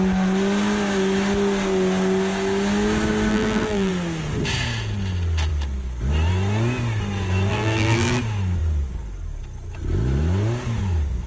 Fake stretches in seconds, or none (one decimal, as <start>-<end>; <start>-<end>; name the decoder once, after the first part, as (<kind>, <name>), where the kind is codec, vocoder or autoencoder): 3.3-3.9 (vocoder, BigVGAN v2); 7.5-8.2